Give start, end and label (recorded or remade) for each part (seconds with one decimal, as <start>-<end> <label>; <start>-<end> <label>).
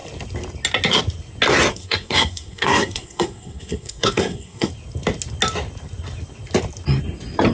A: 0.0-1.7 recorded; 1.7-4.7 remade; 4.7-7.5 recorded